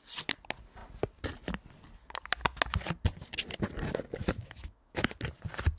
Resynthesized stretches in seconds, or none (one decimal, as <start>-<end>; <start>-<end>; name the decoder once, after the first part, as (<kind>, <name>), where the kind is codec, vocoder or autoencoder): 4.2-5.2 (autoencoder, DAC-VAE)